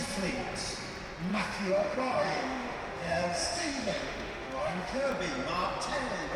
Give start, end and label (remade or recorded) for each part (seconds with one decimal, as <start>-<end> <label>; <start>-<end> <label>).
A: 0.0-1.3 recorded; 1.3-5.1 remade; 5.1-6.4 recorded